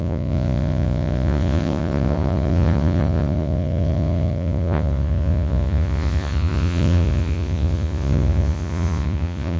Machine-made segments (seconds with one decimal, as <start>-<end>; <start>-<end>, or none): 0.0-9.6

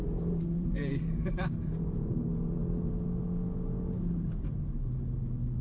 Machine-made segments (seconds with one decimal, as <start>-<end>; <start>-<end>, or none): 0.0-2.2

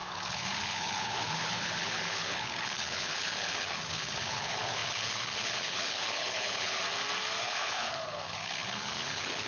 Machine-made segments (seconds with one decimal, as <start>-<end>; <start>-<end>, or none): 0.0-6.8; 7.4-9.5

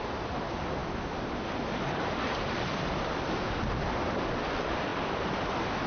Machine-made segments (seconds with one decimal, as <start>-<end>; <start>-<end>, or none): 4.9-5.5

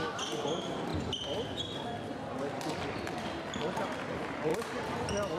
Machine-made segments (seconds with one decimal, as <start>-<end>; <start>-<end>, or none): 4.5-5.4

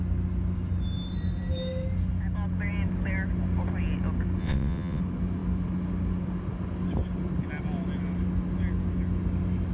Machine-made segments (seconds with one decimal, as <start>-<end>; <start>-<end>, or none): 4.4-5.0

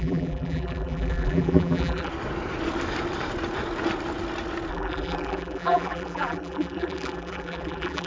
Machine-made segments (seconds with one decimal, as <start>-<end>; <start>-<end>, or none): 0.0-2.1; 4.7-8.1

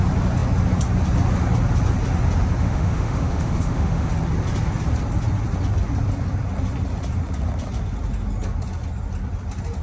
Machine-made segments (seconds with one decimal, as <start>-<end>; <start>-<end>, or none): 2.6-4.1